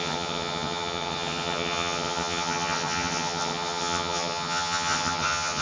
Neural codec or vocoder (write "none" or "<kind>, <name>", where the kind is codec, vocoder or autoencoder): vocoder, HiFi-GAN